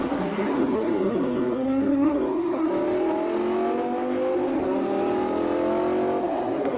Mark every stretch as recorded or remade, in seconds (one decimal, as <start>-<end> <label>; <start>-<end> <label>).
0.0-2.7 remade; 2.7-6.2 recorded; 6.2-6.8 remade

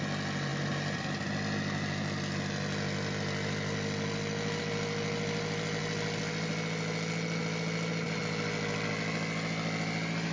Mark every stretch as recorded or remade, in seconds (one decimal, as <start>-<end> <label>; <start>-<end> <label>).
0.0-10.3 recorded